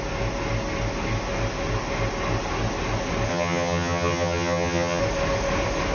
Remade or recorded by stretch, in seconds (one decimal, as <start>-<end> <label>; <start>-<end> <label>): 0.0-3.3 recorded; 3.3-5.0 remade; 5.0-5.9 recorded

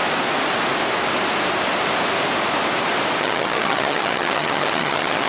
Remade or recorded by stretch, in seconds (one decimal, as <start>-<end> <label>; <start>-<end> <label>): 0.0-3.2 recorded; 3.2-5.3 remade